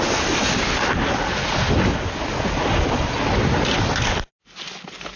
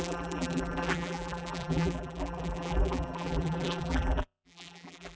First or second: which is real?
first